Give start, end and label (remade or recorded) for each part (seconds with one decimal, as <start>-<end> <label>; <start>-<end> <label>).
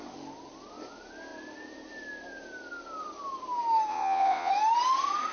0.0-3.9 recorded; 3.9-4.5 remade; 4.5-5.3 recorded